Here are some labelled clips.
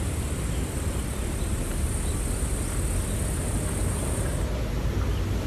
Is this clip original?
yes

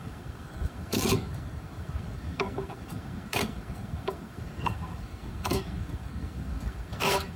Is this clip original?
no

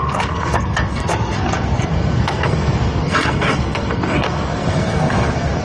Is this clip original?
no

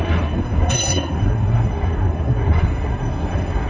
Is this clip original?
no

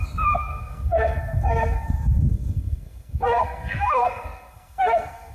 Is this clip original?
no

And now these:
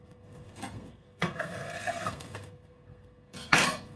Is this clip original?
no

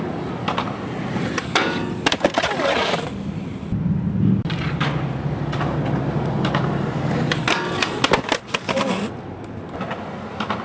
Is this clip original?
yes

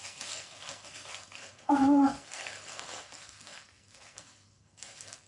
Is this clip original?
no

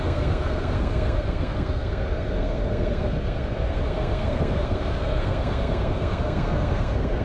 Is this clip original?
no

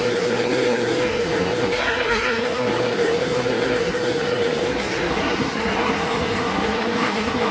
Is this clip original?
no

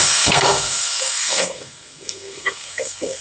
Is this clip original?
no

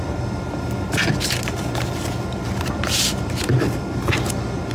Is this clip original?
yes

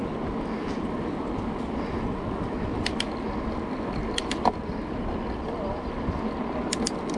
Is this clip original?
yes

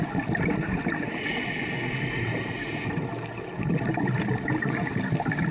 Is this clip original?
yes